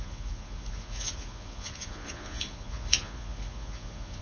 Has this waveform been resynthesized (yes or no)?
yes